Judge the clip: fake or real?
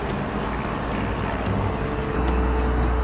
real